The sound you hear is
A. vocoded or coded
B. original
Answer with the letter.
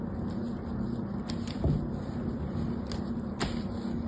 B